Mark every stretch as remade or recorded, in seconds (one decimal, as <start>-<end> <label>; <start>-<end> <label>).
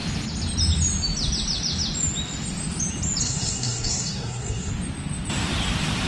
0.0-3.2 recorded; 3.2-4.7 remade; 4.7-6.1 recorded